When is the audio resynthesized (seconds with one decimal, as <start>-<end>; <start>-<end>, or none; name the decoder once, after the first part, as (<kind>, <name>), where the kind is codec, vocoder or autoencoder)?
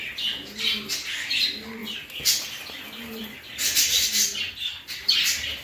none